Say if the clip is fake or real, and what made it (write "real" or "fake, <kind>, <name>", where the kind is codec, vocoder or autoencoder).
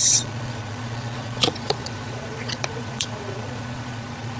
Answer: fake, vocoder, Vocos